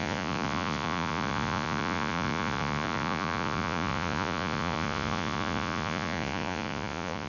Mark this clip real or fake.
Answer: fake